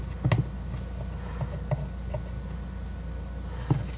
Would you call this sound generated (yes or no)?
no